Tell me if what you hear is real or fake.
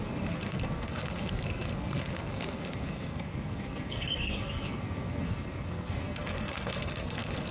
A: fake